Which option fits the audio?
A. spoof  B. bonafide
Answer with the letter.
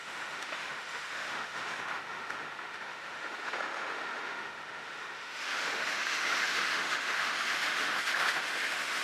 A